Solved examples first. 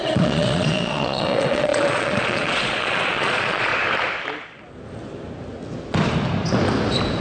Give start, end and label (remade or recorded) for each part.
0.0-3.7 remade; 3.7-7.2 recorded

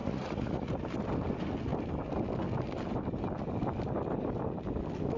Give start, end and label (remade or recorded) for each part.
0.0-0.7 remade; 0.7-5.2 recorded

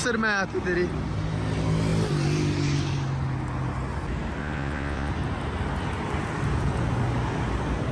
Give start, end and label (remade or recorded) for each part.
0.0-4.4 recorded; 4.4-5.1 remade; 5.1-7.9 recorded

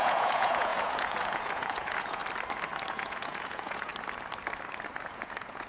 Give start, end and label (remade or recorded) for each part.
0.0-2.2 remade; 2.2-2.9 recorded; 2.9-3.9 remade; 3.9-5.0 recorded; 5.0-5.7 remade